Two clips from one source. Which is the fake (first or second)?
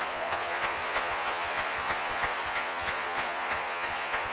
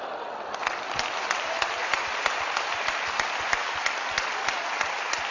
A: first